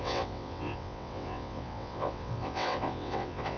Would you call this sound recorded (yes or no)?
no